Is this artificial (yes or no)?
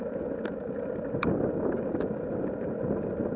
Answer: no